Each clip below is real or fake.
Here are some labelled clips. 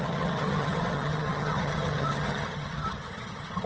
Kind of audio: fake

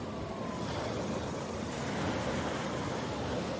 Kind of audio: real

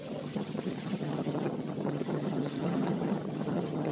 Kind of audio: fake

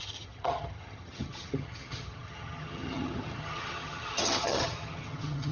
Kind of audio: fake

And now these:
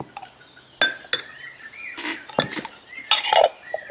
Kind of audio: real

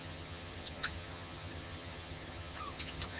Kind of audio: fake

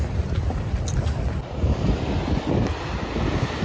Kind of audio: real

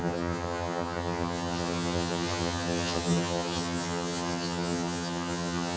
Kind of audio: fake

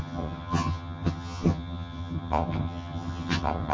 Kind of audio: fake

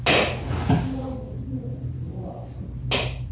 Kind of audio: real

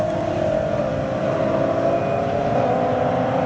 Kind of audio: real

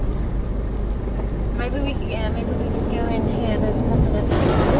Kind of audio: real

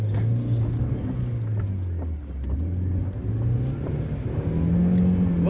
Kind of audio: real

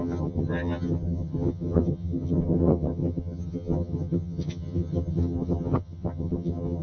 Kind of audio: fake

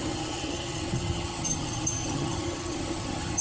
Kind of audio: fake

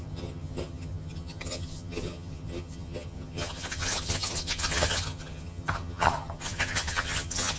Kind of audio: fake